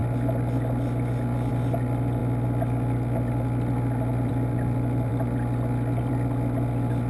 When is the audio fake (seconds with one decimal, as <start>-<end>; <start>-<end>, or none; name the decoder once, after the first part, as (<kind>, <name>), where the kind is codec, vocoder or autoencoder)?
none